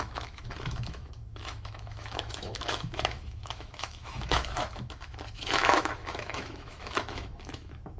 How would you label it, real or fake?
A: fake